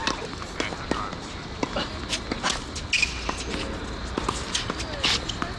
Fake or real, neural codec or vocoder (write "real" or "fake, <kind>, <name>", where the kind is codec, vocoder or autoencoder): real